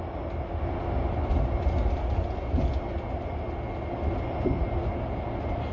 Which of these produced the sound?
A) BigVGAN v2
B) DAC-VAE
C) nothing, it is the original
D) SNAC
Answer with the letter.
C